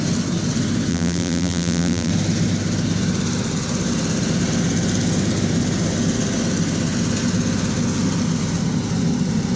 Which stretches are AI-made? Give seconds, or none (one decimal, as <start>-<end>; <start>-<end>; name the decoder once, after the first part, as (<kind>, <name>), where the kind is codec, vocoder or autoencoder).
0.9-2.1 (vocoder, BigVGAN v2)

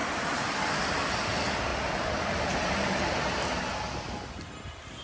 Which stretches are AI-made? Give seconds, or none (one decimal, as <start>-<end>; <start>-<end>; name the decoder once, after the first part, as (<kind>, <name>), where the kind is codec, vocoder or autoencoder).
0.0-0.6 (vocoder, BigVGAN v2); 1.7-3.4